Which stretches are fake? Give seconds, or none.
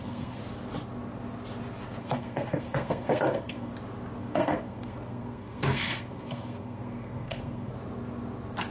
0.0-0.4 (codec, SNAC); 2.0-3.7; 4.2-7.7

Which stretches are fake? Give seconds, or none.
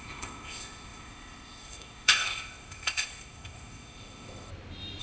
0.0-4.5 (codec, ZipCodec)